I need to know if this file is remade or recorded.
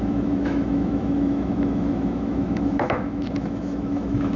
remade